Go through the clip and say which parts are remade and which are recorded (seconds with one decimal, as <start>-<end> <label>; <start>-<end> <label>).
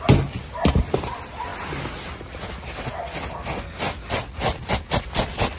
0.0-5.6 recorded